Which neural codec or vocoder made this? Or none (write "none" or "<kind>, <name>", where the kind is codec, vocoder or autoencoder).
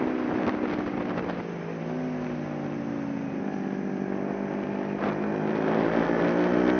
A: none